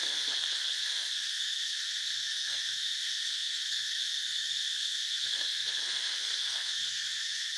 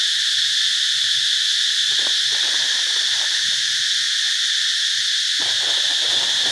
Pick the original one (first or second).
second